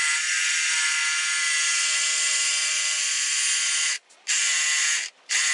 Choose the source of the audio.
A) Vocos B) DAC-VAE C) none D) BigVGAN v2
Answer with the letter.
C